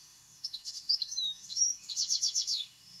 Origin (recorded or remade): remade